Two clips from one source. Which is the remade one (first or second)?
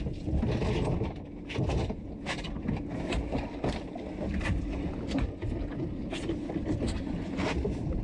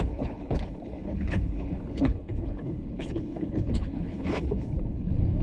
second